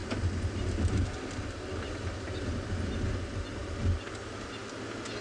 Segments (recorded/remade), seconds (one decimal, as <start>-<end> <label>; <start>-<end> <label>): 0.0-5.2 recorded